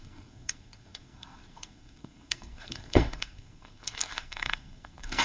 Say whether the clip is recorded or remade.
remade